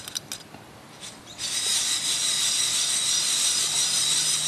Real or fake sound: real